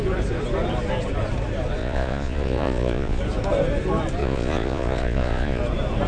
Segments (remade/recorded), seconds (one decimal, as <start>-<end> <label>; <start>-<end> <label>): 0.0-1.8 recorded; 1.8-3.2 remade; 3.2-4.2 recorded; 4.2-5.6 remade; 5.6-6.1 recorded